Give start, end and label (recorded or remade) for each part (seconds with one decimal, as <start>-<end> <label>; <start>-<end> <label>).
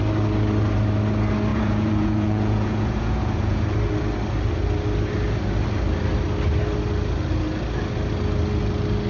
0.0-1.5 recorded; 1.5-3.6 remade; 3.6-9.1 recorded